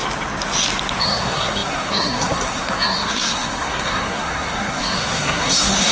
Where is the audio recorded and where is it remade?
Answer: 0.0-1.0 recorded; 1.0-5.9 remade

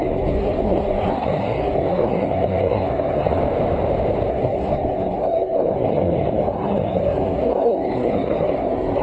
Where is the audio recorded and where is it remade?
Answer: 0.0-3.4 remade; 3.4-4.3 recorded; 4.3-9.0 remade

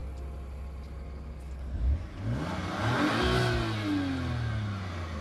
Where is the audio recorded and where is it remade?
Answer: 0.0-5.2 recorded

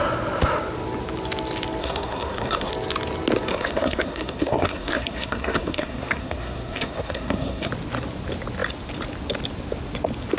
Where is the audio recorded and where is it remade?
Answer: 0.0-1.8 recorded; 1.8-2.7 remade; 2.7-3.5 recorded; 3.5-7.7 remade; 7.7-10.4 recorded

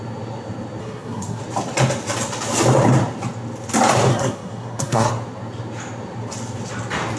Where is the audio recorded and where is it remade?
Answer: 0.0-0.8 recorded; 0.8-1.4 remade; 1.4-4.1 recorded; 4.1-5.1 remade; 5.1-7.2 recorded